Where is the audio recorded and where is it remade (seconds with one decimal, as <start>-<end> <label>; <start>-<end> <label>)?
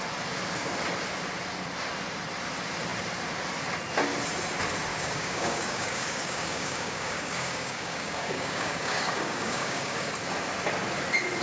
0.0-4.9 recorded; 4.9-10.1 remade; 10.1-11.4 recorded